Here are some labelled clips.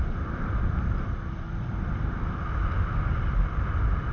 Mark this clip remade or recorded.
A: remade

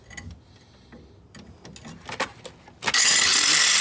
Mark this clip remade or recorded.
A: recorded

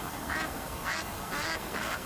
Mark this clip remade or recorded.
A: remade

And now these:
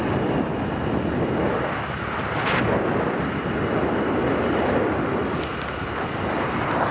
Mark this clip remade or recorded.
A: recorded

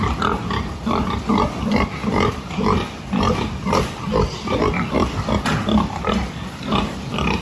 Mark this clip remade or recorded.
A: remade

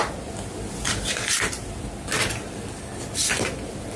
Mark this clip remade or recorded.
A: recorded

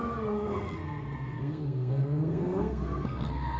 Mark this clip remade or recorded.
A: remade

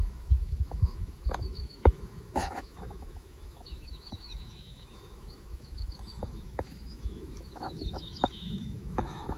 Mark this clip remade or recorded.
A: remade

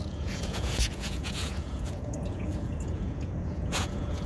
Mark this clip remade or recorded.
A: remade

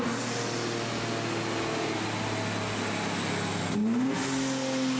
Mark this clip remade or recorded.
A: recorded